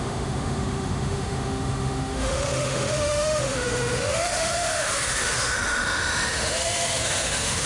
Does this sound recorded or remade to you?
remade